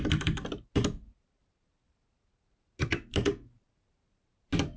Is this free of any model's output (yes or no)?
no